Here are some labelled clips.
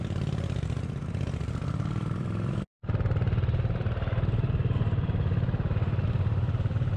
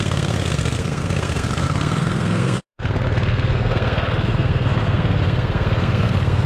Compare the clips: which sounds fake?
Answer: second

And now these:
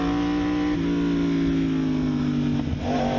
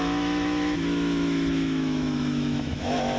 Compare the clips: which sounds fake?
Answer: second